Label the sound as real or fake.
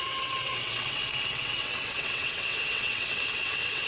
fake